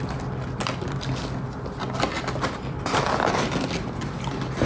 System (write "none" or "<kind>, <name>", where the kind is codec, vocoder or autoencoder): none